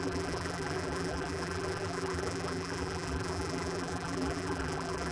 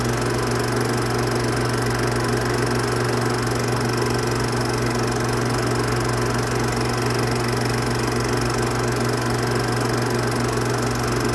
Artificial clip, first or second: first